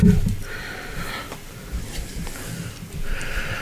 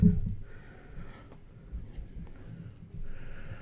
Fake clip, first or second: first